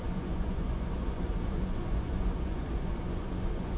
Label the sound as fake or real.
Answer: fake